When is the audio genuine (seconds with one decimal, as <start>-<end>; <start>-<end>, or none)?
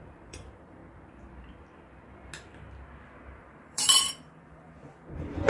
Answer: 0.8-3.4